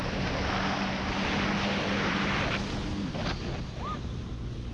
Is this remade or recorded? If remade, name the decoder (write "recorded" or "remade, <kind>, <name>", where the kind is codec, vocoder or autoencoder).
recorded